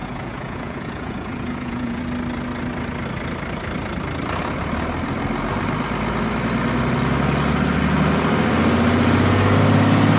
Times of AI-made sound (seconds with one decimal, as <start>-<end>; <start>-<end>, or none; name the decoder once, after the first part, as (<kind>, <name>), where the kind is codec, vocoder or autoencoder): 0.0-2.0 (vocoder, Vocos)